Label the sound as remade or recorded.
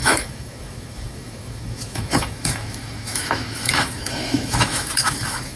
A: remade